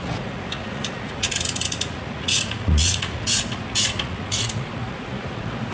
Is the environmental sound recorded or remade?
remade